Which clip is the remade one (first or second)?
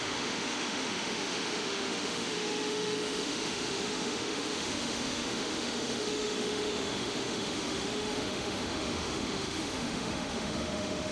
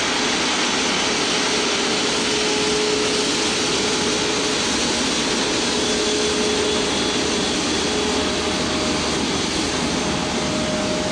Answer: first